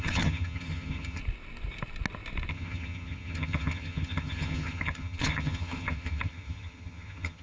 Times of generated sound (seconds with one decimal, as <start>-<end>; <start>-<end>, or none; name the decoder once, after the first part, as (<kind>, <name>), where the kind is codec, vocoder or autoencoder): 0.0-1.2 (vocoder, HiFi-GAN); 2.5-7.4